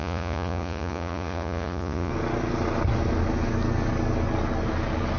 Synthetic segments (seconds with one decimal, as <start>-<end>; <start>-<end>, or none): 0.0-2.1